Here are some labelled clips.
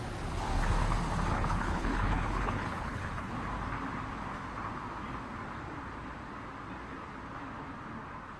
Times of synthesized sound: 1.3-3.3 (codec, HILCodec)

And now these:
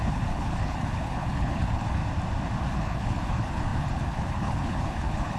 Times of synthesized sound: 0.0-2.0 (codec, HILCodec); 2.6-5.4

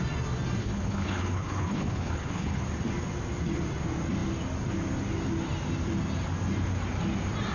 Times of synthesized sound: 0.6-2.6 (codec, HILCodec)

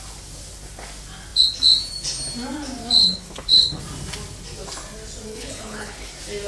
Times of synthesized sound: 3.0-3.8 (codec, HILCodec); 5.3-6.1

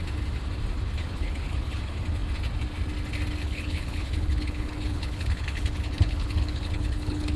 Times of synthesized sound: 1.0-1.8 (codec, HILCodec); 3.4-7.4